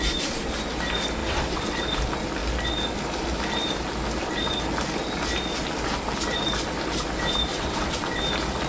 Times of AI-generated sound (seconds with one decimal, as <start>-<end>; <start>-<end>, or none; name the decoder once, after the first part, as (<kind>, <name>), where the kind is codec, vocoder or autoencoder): 1.2-1.8 (vocoder, WaveNeXt); 7.5-8.2